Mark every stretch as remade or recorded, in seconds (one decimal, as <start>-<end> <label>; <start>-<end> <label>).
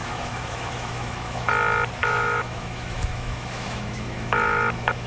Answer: 0.0-1.5 remade; 1.5-2.0 recorded; 2.0-5.1 remade